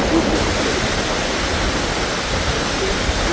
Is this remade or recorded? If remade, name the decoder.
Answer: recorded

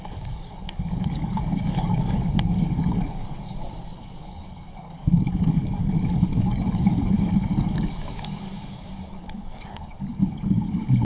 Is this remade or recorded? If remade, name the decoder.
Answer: remade, codec, DAC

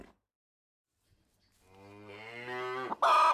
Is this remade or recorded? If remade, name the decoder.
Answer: recorded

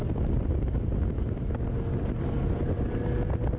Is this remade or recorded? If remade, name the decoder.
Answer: recorded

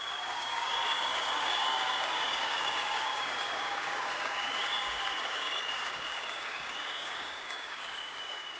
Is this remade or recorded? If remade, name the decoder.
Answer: remade, codec, DAC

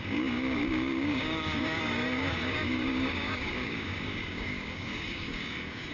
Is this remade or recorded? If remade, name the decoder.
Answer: remade, codec, DAC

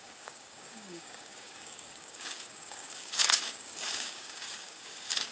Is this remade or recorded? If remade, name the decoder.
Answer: remade, codec, DAC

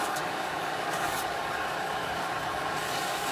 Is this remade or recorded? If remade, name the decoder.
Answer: remade, codec, DAC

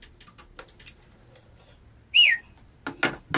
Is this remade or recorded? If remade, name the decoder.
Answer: recorded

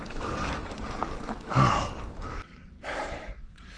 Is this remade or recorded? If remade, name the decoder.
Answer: remade, codec, DAC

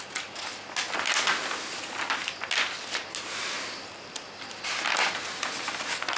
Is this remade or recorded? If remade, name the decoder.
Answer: recorded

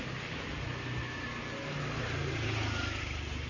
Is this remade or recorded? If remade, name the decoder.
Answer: recorded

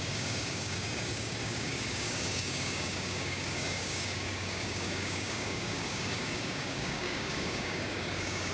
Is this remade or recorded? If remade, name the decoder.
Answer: remade, codec, DAC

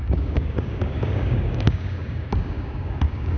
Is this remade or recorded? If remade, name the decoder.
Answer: remade, codec, DAC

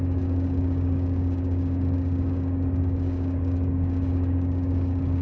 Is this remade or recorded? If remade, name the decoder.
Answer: remade, codec, DAC